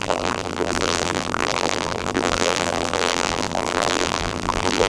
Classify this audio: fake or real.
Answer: fake